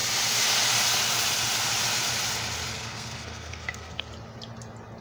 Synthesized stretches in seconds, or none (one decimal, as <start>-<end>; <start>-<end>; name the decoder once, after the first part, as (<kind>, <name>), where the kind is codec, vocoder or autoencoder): 2.7-4.1 (codec, SNAC)